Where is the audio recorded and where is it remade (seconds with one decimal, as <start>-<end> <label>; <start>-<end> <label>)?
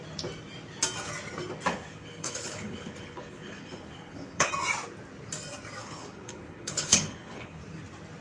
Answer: 0.0-1.7 recorded; 1.7-4.5 remade; 4.5-5.8 recorded; 5.8-7.6 remade; 7.6-8.2 recorded